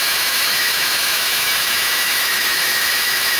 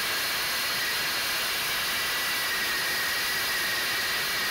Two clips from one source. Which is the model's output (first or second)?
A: first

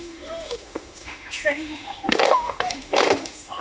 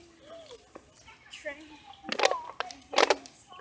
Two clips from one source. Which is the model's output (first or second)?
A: first